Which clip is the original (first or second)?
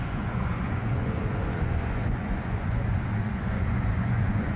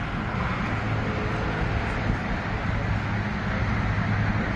second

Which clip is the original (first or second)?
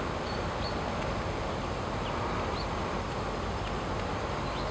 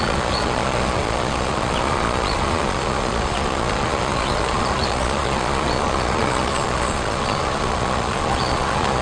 first